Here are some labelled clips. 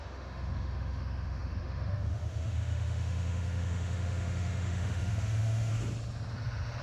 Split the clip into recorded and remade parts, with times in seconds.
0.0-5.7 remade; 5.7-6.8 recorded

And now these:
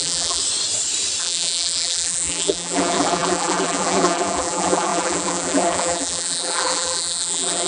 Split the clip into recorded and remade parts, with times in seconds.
0.0-0.4 remade; 0.4-1.2 recorded; 1.2-7.7 remade